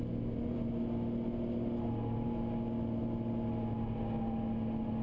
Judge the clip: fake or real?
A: real